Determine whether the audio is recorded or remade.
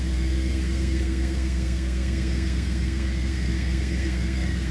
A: remade